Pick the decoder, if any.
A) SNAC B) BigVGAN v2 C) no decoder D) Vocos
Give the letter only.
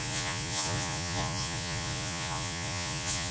D